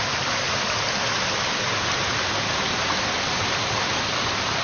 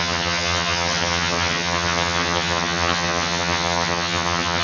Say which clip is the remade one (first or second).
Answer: second